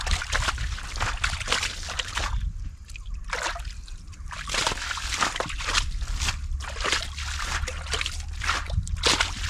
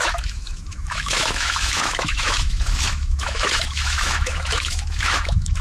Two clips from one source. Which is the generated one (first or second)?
second